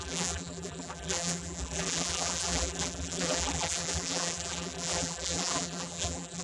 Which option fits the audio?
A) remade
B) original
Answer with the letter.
A